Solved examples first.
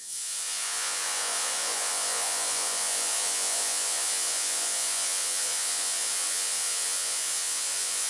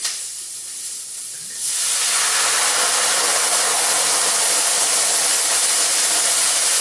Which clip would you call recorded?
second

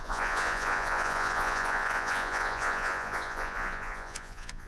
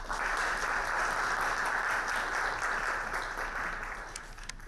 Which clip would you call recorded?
second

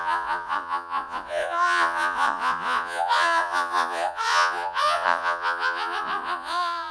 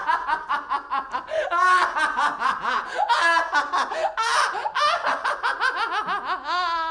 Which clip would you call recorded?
second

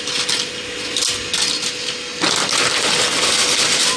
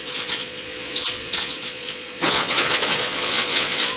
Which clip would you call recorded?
first